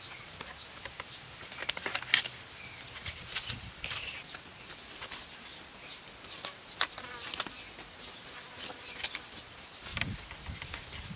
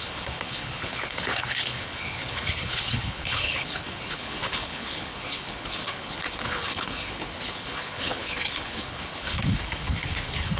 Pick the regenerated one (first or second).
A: second